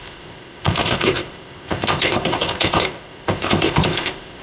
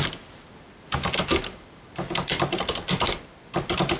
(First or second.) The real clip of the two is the second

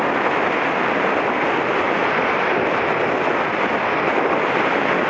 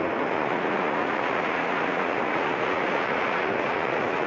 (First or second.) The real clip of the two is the first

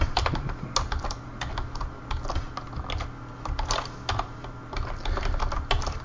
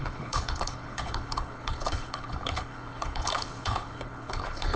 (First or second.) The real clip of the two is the first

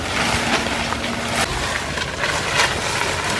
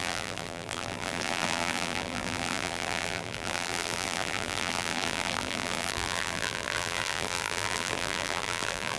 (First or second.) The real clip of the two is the first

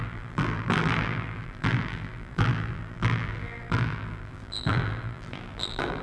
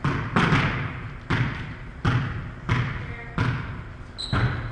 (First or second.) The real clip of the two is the second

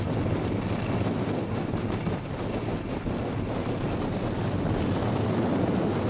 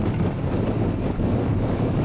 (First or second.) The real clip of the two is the first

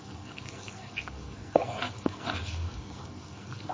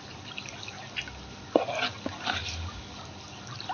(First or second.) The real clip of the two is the second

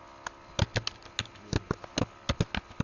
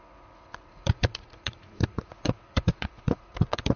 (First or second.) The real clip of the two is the first